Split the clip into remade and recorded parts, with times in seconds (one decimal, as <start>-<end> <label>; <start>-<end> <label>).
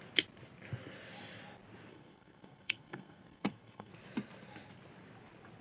0.0-1.9 recorded; 1.9-3.9 remade; 3.9-5.6 recorded